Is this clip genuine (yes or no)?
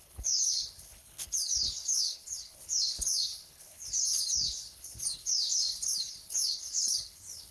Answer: no